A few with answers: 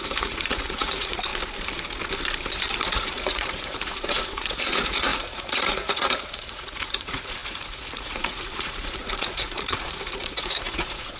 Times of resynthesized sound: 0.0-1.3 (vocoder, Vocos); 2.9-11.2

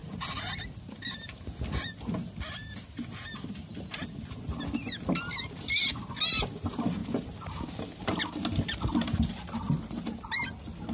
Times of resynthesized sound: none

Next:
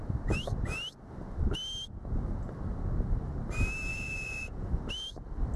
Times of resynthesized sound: 3.9-4.7 (vocoder, Vocos)